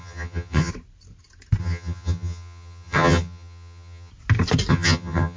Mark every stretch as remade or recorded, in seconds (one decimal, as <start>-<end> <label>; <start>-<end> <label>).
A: 0.0-0.7 remade; 0.7-1.6 recorded; 1.6-4.1 remade; 4.1-4.7 recorded; 4.7-5.4 remade